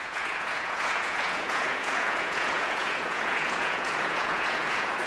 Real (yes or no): no